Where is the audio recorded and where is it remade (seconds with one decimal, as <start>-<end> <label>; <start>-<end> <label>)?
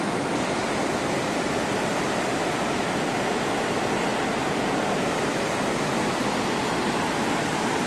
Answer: 0.0-4.1 recorded; 4.1-4.7 remade; 4.7-7.9 recorded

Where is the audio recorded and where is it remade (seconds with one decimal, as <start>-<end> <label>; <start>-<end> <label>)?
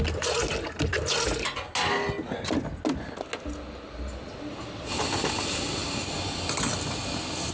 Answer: 0.0-7.5 recorded